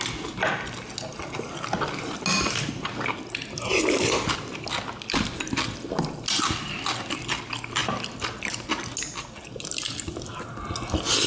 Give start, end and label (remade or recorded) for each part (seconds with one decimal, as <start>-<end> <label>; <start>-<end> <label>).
0.0-11.3 recorded